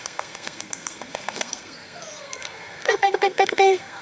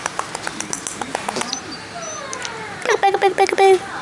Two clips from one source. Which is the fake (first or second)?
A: first